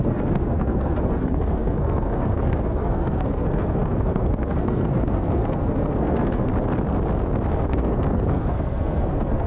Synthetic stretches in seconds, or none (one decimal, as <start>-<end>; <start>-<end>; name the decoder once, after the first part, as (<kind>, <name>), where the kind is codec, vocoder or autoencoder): 0.0-6.5 (codec, SNAC); 7.5-9.5